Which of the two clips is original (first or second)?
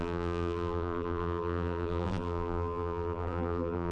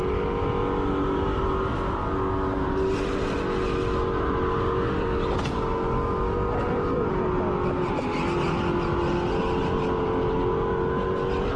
second